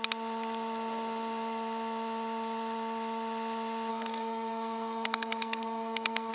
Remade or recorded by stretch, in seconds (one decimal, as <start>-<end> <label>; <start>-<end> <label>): 0.0-3.9 recorded; 3.9-6.3 remade